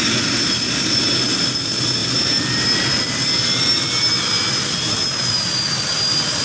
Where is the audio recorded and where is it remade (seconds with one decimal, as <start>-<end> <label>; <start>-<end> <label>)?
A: 0.0-6.4 recorded